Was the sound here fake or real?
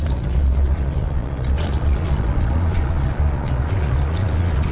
fake